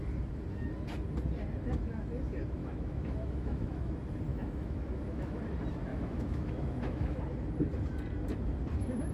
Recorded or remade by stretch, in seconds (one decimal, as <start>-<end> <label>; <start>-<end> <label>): 0.0-2.6 recorded; 2.6-3.9 remade; 3.9-4.3 recorded; 4.3-5.4 remade; 5.4-5.9 recorded; 5.9-7.2 remade; 7.2-9.1 recorded